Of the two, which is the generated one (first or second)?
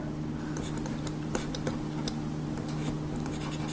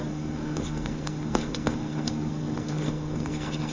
second